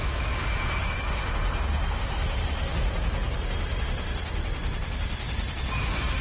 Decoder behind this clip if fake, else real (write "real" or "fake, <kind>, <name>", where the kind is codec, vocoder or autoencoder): real